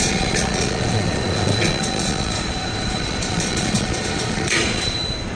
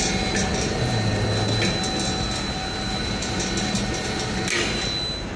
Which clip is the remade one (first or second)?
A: first